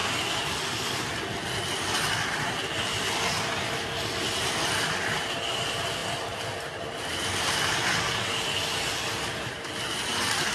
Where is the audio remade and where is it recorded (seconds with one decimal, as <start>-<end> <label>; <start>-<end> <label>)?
0.0-10.5 recorded